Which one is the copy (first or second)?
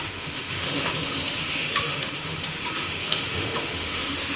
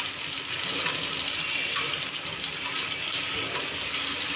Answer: first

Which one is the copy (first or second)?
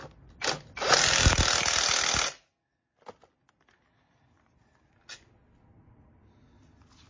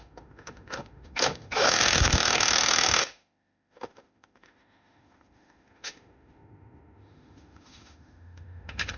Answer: second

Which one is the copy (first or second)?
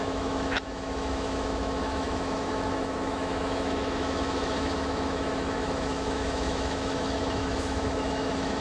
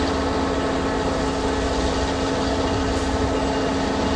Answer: first